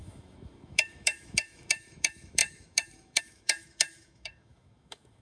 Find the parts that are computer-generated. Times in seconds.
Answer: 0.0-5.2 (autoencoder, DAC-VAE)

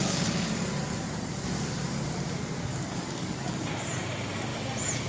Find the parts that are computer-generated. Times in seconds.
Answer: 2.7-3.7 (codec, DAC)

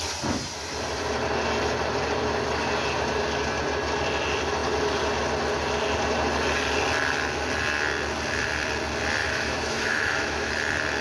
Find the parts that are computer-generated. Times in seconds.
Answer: 9.2-10.5 (autoencoder, DAC-VAE)

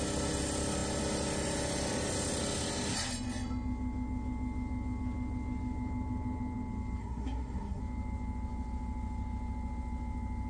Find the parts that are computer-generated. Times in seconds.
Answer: 7.0-7.8 (codec, SNAC)

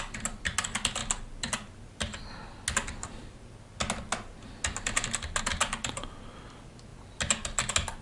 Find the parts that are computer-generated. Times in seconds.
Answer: none

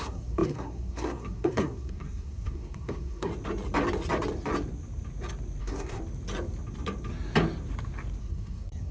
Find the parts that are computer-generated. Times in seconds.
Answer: 0.0-3.3 (codec, SNAC); 5.6-6.0; 8.2-8.9